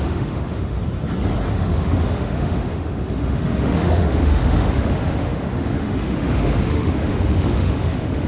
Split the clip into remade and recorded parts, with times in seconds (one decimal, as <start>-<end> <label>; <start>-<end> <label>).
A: 0.0-0.8 remade; 0.8-1.5 recorded; 1.5-8.3 remade